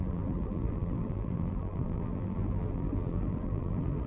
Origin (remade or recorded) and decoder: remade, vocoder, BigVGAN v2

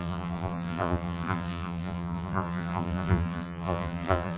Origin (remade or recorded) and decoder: remade, vocoder, BigVGAN v2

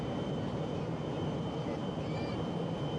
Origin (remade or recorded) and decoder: remade, vocoder, BigVGAN v2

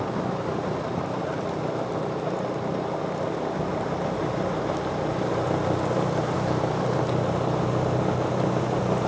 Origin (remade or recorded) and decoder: recorded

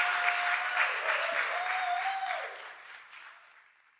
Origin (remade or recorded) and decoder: recorded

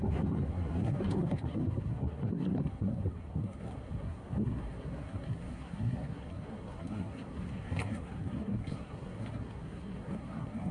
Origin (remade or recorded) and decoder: remade, codec, SNAC